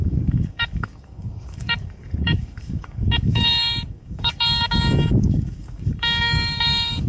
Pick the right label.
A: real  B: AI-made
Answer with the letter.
B